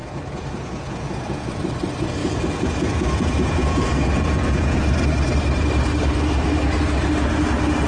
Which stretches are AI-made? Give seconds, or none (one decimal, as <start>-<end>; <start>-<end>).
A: 0.0-1.5; 2.2-4.8